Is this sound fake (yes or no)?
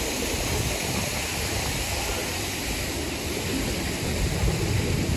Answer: no